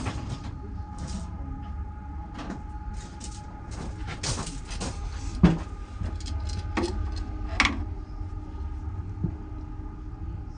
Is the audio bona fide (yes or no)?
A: yes